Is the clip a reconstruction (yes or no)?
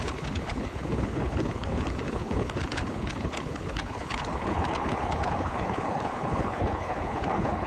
yes